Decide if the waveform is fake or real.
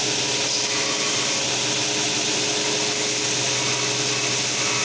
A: real